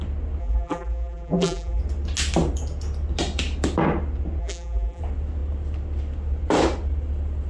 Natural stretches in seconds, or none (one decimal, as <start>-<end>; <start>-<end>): 0.0-0.4; 1.8-4.4; 5.0-7.5